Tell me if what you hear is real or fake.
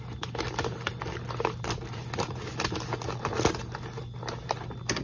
real